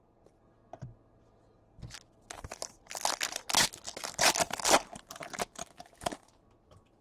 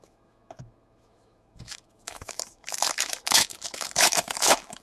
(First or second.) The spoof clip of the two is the second